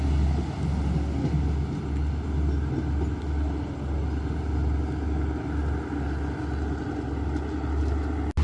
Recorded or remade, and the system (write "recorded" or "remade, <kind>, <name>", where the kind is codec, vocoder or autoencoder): recorded